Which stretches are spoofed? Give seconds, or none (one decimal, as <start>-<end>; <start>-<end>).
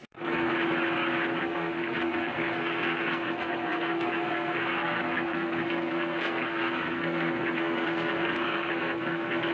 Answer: 0.0-0.5; 1.4-9.5